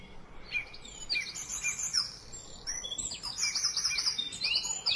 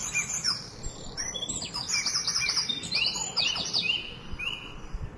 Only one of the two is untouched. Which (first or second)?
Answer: first